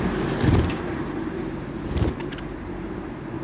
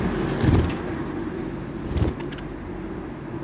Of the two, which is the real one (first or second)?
second